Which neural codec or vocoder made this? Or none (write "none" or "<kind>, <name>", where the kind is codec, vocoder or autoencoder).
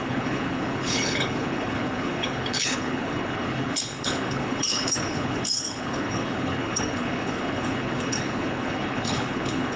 codec, HILCodec